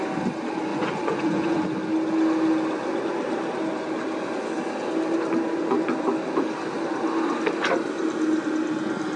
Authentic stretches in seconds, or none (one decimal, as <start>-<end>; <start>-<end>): 0.0-0.7; 1.6-9.2